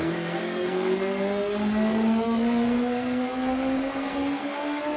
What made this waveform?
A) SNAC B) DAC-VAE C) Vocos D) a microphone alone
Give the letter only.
A